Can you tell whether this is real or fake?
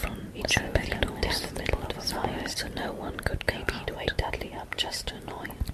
real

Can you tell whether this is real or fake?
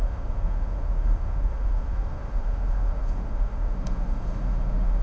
fake